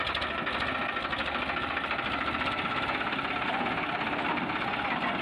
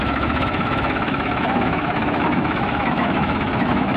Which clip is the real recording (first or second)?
first